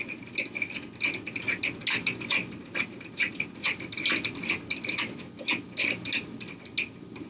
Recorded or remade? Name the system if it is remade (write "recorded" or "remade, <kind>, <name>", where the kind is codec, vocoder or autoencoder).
recorded